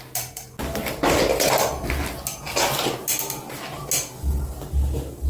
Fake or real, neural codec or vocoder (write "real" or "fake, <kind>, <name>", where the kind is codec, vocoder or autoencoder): real